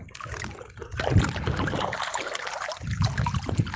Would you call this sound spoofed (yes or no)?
no